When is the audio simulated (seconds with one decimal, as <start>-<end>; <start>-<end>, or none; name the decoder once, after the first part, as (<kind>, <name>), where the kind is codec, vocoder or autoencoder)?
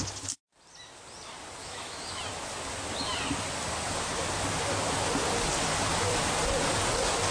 1.6-2.2 (autoencoder, DAC-VAE)